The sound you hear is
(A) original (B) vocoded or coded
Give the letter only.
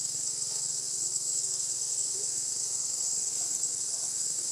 B